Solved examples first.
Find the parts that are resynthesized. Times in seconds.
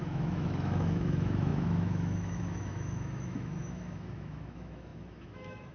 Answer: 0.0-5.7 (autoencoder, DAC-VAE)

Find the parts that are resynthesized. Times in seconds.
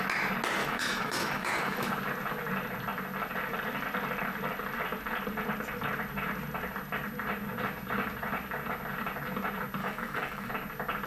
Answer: 0.6-1.9 (autoencoder, DAC-VAE); 9.8-10.5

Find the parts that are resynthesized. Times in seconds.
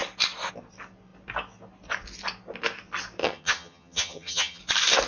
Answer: 3.2-4.6 (vocoder, HiFi-GAN)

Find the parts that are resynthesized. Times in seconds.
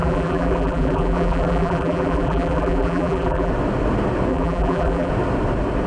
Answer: 0.0-3.5 (vocoder, BigVGAN v2); 4.3-5.1